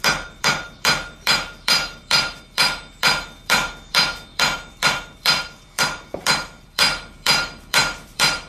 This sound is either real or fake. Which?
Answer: fake